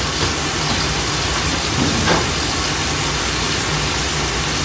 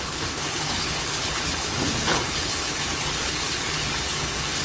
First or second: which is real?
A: first